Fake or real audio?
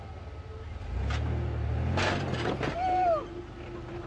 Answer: real